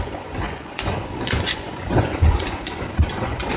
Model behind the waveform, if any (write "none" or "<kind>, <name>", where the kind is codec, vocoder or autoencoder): vocoder, Vocos